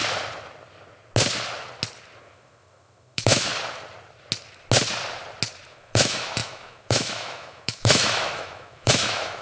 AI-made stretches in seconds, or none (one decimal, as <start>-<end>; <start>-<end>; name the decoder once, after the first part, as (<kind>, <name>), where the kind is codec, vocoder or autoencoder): 2.2-3.5 (autoencoder, DAC-VAE); 5.7-9.4